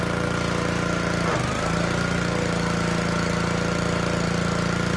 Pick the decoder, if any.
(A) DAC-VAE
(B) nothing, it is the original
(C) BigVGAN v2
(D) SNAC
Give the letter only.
B